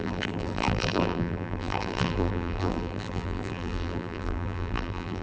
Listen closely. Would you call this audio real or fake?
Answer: fake